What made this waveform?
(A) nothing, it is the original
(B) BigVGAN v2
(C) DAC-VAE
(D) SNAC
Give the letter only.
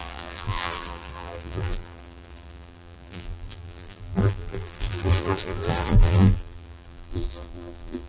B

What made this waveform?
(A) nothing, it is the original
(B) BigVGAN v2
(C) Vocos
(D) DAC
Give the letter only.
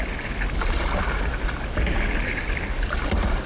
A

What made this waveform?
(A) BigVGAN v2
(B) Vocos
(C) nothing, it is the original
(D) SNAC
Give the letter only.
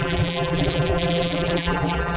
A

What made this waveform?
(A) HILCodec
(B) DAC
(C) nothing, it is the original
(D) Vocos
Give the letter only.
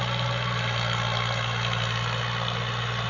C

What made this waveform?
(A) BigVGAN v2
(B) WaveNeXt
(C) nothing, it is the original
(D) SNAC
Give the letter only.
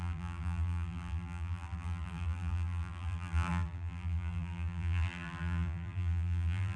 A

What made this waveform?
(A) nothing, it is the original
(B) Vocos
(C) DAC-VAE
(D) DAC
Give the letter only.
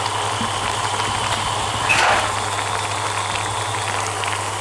A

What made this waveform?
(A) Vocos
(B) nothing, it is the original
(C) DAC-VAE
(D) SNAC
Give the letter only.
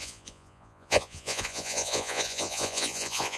A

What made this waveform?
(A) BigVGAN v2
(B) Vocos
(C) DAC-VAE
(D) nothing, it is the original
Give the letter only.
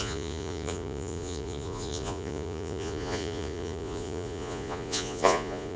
B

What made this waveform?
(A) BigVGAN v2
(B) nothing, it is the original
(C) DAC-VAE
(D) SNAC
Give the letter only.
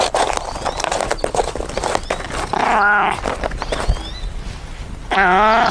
B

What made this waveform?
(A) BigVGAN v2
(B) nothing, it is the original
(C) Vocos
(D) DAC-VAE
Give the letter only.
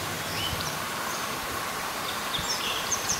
A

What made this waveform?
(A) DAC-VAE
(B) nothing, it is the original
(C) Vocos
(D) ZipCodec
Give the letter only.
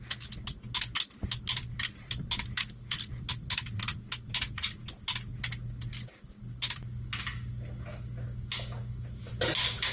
B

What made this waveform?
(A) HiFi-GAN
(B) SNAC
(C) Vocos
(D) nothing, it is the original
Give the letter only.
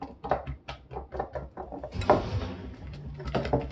D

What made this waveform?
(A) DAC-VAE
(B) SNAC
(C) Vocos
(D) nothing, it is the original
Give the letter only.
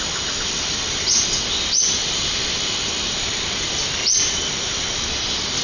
D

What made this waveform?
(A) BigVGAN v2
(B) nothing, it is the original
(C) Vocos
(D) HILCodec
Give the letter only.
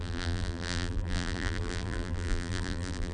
A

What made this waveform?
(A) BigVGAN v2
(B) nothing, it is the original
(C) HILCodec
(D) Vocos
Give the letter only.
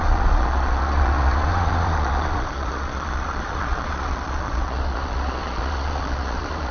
D